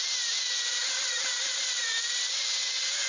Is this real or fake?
real